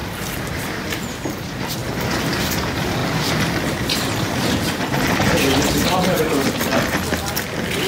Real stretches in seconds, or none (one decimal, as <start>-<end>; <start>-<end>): 1.8-2.5; 6.7-7.4